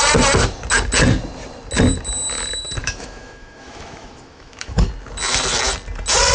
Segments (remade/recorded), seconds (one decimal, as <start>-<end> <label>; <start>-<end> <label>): 0.0-2.8 recorded; 2.8-4.9 remade; 4.9-6.3 recorded